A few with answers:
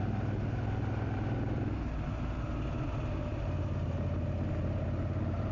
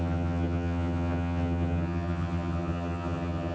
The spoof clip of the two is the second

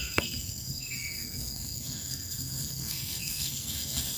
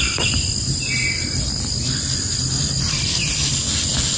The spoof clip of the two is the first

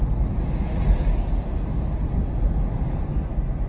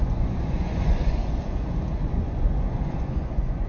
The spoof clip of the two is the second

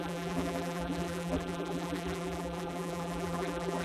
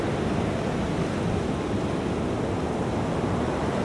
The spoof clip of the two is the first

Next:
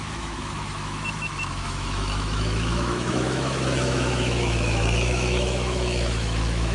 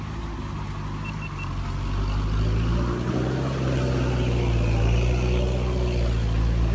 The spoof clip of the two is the first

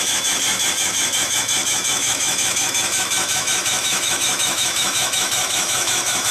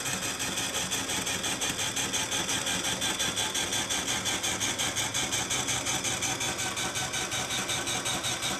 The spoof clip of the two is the first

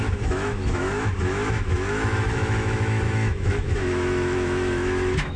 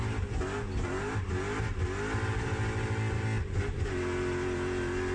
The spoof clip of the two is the first